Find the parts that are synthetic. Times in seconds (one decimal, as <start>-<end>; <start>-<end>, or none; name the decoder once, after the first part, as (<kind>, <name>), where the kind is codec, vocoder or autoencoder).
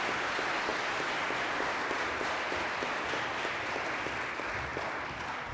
none